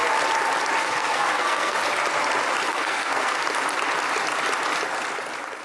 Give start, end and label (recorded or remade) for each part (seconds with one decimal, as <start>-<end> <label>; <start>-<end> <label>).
0.0-0.8 recorded; 0.8-1.8 remade; 1.8-2.7 recorded; 2.7-3.4 remade; 3.4-5.6 recorded